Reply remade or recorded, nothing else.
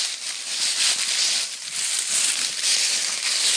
recorded